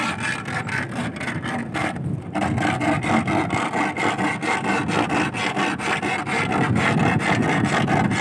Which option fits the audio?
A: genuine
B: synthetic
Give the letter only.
A